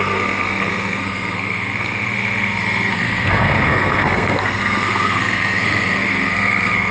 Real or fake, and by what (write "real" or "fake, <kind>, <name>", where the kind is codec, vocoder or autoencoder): fake, codec, SNAC